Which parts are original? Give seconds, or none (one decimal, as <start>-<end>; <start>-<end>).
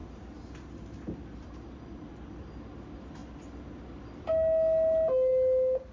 2.5-5.9